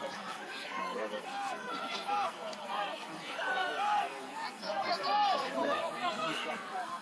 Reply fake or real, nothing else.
fake